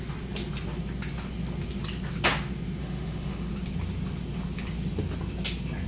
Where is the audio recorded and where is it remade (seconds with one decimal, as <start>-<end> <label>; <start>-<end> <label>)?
0.0-2.8 recorded; 2.8-3.5 remade; 3.5-5.9 recorded